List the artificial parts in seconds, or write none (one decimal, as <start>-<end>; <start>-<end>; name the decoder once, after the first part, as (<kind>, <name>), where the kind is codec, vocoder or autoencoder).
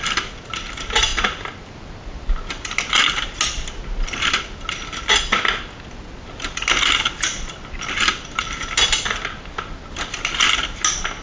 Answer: none